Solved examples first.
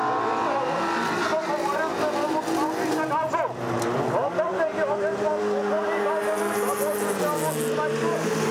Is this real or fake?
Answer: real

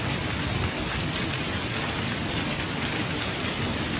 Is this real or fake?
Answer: real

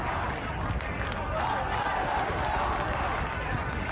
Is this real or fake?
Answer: real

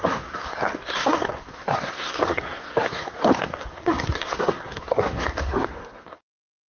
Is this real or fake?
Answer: fake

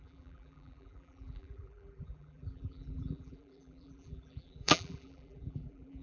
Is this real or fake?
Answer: fake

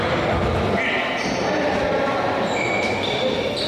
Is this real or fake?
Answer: real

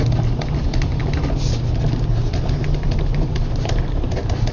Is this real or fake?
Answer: real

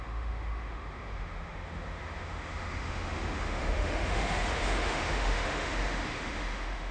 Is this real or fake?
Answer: fake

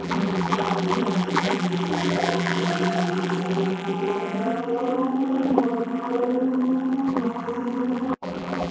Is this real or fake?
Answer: fake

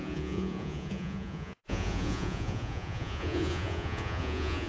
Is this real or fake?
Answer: fake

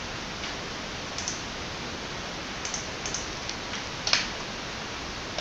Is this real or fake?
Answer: real